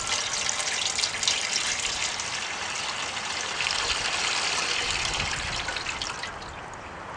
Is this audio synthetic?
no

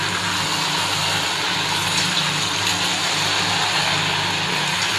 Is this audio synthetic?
no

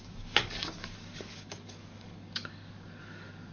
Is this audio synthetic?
yes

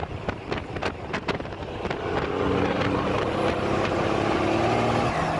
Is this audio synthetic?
no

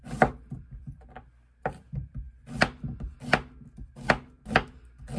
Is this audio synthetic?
no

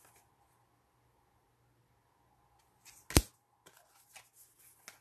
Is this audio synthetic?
no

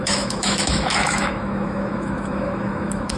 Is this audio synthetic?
yes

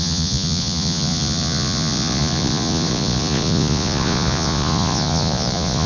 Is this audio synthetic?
yes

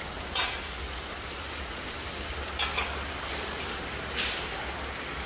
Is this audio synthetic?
no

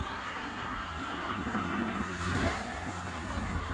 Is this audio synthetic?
yes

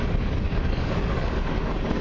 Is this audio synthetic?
yes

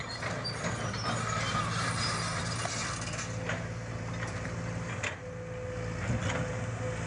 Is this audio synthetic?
no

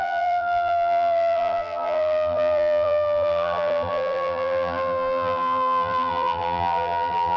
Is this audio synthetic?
yes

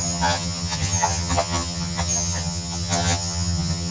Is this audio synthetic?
yes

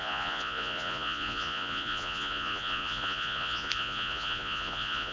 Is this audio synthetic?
yes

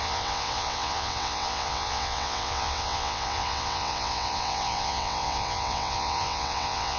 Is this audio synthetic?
yes